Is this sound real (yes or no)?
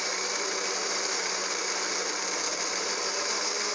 yes